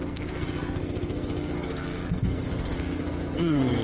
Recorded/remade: remade